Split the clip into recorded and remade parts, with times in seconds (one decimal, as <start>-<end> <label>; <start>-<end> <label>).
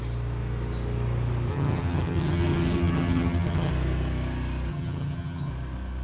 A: 0.0-1.5 recorded; 1.5-3.7 remade; 3.7-4.7 recorded; 4.7-5.5 remade; 5.5-6.0 recorded